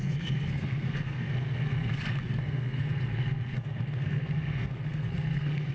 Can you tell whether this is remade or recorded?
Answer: remade